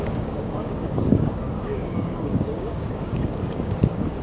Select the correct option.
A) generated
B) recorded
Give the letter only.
A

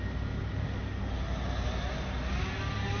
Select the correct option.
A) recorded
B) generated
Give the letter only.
A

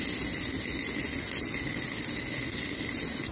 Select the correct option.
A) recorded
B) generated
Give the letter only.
A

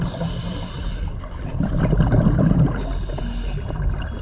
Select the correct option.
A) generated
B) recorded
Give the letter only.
B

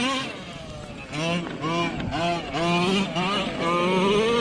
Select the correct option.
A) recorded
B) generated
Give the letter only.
A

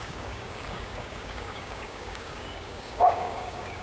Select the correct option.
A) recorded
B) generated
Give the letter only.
B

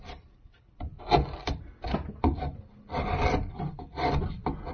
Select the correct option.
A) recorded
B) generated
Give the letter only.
A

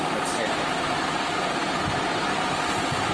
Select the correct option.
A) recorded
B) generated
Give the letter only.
A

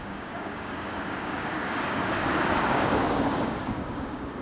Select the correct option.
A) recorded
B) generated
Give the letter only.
B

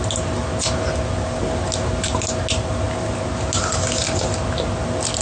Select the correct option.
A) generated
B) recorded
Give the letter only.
B